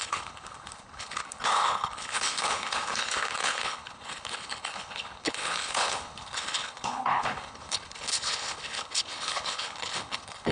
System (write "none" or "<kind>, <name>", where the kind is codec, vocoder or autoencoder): codec, HILCodec